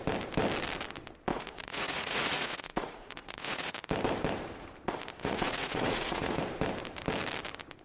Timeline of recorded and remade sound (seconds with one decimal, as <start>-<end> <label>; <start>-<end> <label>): 0.0-1.3 recorded; 1.3-3.7 remade; 3.7-5.2 recorded; 5.2-6.4 remade; 6.4-7.8 recorded